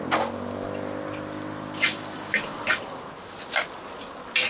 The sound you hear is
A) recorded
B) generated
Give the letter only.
A